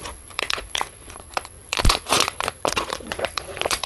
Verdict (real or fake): fake